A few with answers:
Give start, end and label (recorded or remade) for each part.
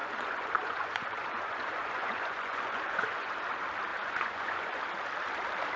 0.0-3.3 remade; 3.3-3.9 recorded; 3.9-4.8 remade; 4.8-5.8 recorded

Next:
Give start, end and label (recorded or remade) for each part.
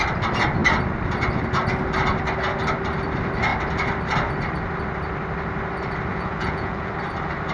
0.0-6.1 recorded; 6.1-6.9 remade; 6.9-7.5 recorded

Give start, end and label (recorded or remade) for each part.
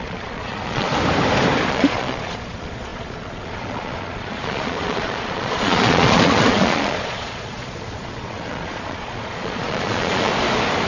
0.0-0.9 remade; 0.9-1.7 recorded; 1.7-10.3 remade; 10.3-10.9 recorded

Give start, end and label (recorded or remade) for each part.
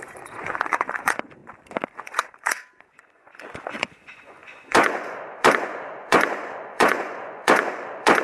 0.0-1.4 remade; 1.4-1.9 recorded; 1.9-8.2 remade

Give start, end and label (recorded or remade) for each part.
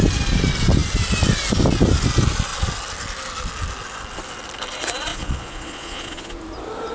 0.0-5.1 recorded; 5.1-6.4 remade; 6.4-6.9 recorded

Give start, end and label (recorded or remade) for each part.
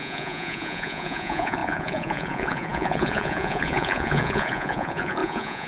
0.0-5.7 remade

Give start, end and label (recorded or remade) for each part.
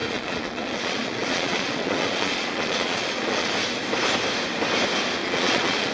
0.0-3.5 remade; 3.5-5.2 recorded; 5.2-5.9 remade